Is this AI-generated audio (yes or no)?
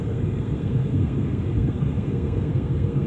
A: yes